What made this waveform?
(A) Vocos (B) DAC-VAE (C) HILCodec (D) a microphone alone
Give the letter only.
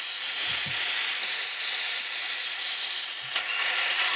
A